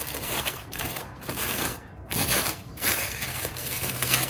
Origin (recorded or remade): remade